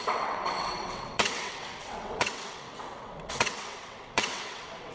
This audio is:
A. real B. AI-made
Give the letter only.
B